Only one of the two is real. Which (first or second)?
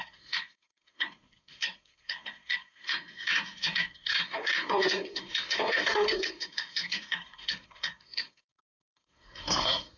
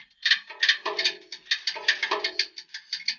second